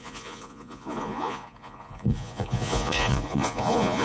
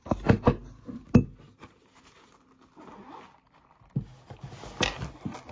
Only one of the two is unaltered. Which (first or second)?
second